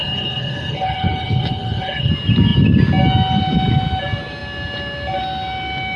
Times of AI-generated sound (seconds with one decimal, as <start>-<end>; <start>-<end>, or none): 0.0-2.1